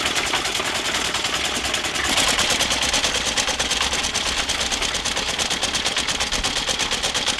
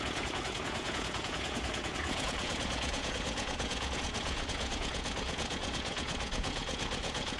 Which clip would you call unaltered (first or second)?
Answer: first